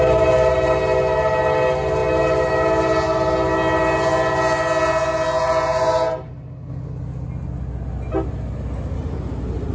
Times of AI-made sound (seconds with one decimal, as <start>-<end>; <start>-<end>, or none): none